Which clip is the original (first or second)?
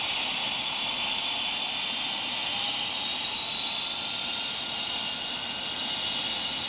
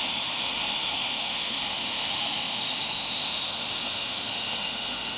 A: first